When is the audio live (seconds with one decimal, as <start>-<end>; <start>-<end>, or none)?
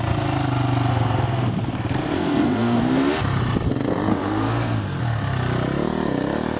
0.0-0.9; 2.8-4.1; 5.0-6.6